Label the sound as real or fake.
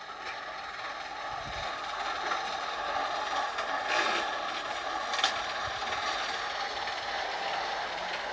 real